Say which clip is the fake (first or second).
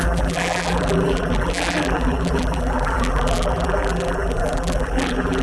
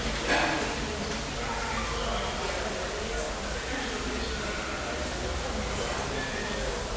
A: first